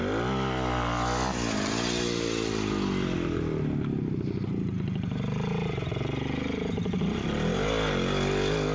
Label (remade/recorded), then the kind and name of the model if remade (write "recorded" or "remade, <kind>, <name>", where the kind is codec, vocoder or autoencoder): recorded